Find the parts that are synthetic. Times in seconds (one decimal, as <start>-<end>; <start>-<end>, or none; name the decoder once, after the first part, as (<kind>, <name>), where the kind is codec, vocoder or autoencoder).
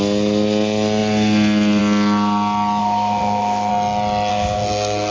2.8-3.7 (codec, SNAC); 4.3-5.1